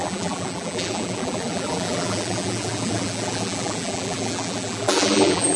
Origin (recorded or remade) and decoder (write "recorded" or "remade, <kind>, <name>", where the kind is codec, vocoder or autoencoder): remade, vocoder, BigVGAN v2